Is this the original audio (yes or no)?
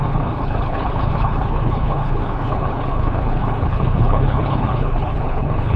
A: no